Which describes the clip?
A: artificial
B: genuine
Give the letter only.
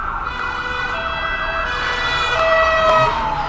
B